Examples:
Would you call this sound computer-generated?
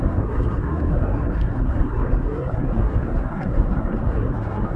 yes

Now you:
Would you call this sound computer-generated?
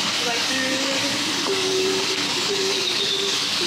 yes